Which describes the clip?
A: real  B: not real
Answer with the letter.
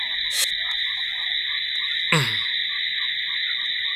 A